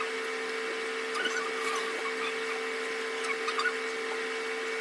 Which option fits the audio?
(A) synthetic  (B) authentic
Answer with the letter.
B